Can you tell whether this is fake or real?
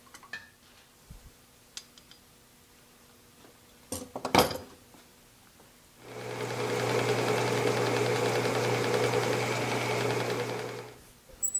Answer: real